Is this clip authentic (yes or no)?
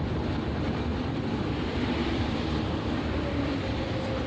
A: no